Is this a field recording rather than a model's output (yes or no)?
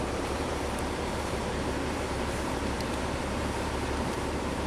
no